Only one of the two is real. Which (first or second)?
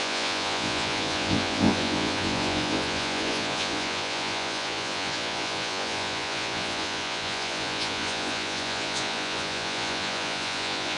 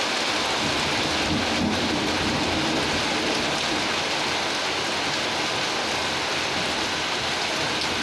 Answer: second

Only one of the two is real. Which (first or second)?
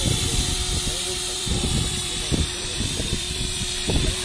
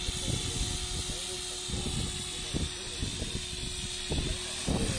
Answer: second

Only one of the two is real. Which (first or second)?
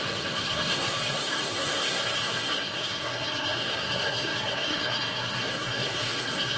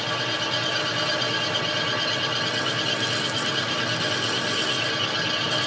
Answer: second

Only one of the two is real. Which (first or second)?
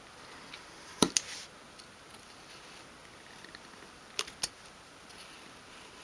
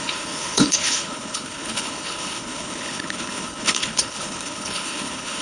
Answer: first